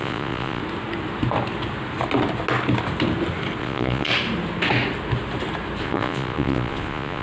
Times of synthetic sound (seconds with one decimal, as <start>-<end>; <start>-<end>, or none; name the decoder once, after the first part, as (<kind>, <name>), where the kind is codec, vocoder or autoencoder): 0.0-0.6 (vocoder, Vocos); 3.6-4.1; 5.8-7.2